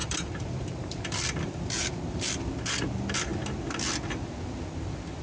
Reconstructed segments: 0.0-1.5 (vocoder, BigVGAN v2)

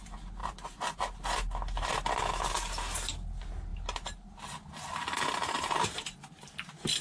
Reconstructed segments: 0.4-1.0 (vocoder, BigVGAN v2)

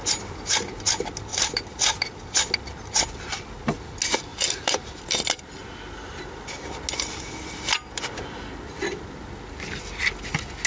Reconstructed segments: 1.3-2.2 (vocoder, BigVGAN v2); 4.3-5.0

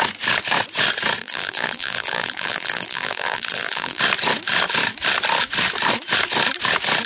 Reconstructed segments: 1.2-4.0 (vocoder, BigVGAN v2)

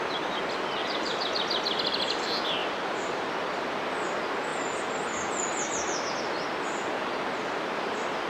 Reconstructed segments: 0.8-1.3 (vocoder, BigVGAN v2); 2.6-3.2

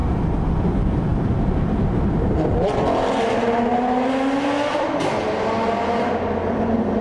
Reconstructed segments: 4.7-5.5 (vocoder, BigVGAN v2)

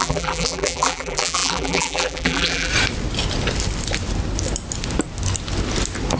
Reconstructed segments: 0.0-2.7 (vocoder, BigVGAN v2)